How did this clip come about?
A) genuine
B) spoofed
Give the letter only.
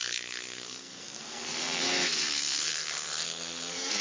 B